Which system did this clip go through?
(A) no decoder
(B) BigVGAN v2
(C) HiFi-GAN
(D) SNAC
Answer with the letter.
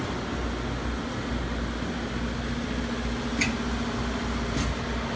A